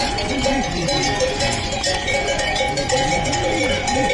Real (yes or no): no